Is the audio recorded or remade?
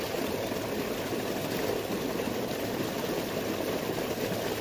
recorded